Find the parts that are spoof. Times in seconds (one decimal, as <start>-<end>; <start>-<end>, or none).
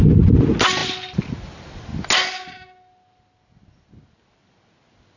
none